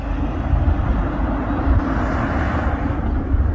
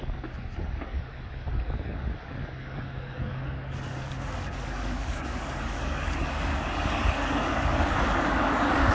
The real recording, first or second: first